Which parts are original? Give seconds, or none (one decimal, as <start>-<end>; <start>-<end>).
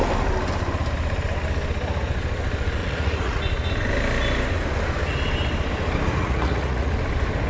0.0-2.8; 3.4-6.2; 6.9-7.5